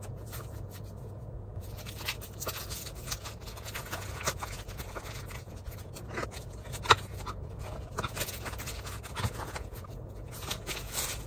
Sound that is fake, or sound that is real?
fake